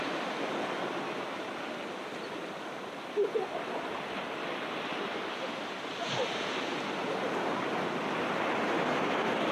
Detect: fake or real real